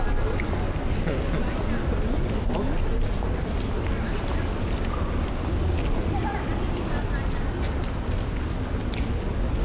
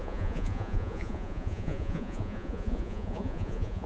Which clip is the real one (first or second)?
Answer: first